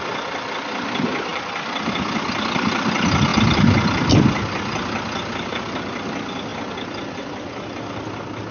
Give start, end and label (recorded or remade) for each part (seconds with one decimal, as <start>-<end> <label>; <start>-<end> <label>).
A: 0.0-1.3 recorded; 1.3-1.9 remade; 1.9-8.5 recorded